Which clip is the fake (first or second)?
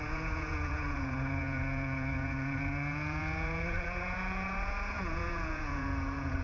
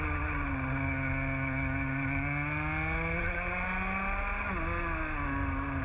first